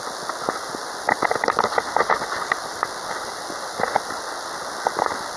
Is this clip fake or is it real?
real